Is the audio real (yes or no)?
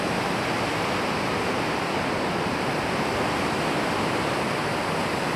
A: yes